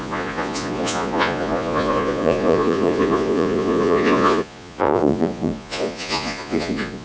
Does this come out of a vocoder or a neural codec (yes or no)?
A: yes